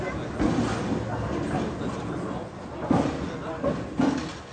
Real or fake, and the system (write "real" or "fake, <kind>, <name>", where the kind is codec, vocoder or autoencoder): real